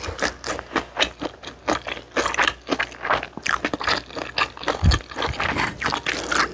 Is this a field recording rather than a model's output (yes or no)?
yes